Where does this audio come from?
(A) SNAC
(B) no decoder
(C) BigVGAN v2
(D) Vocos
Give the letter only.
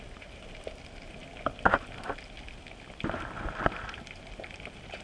B